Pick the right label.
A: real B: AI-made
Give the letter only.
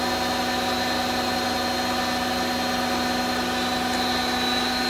A